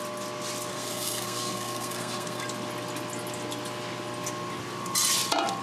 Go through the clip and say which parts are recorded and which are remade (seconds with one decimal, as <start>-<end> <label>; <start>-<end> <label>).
0.0-0.7 recorded; 0.7-2.4 remade; 2.4-5.6 recorded